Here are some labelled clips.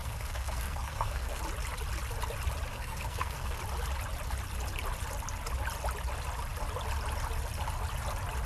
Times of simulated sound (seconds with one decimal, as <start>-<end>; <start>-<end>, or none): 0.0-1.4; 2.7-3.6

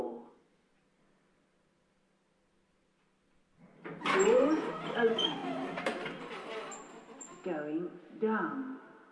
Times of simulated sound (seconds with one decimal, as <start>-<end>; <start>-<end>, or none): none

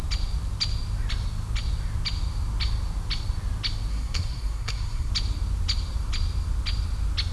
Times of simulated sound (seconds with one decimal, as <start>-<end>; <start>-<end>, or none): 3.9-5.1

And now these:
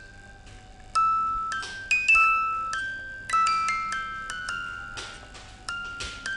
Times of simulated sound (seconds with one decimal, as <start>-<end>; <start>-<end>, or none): none

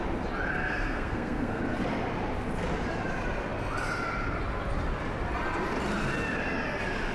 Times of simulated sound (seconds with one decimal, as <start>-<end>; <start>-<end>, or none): 0.5-1.6

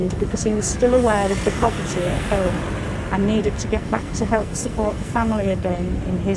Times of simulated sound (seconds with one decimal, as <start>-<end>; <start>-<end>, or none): 0.0-2.6; 3.4-6.0

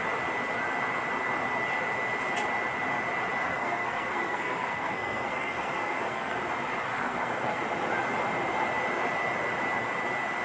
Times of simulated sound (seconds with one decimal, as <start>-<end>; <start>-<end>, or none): 3.4-6.4; 6.9-7.6